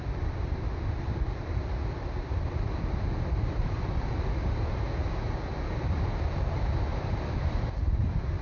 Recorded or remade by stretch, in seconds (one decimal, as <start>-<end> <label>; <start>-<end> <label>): 0.0-6.9 recorded; 6.9-7.6 remade; 7.6-8.4 recorded